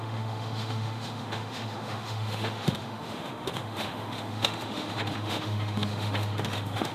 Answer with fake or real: fake